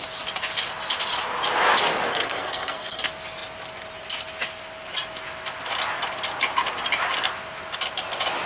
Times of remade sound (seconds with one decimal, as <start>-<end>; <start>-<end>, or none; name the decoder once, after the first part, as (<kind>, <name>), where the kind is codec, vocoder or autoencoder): 2.1-3.0 (codec, SNAC)